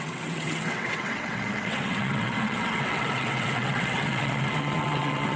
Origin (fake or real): fake